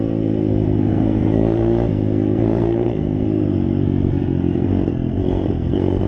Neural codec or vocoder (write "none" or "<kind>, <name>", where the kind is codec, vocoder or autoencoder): codec, SNAC